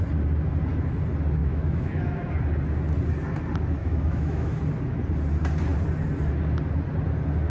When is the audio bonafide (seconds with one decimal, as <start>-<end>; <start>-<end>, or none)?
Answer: 0.0-1.4; 2.3-3.8; 4.6-7.5